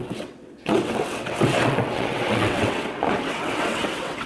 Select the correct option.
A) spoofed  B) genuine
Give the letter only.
A